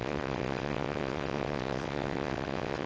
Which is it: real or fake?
fake